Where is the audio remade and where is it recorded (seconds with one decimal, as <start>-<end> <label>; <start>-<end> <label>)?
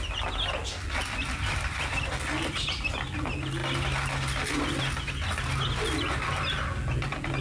0.0-7.4 recorded